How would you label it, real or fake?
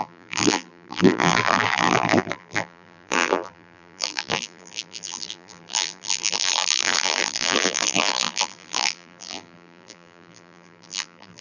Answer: fake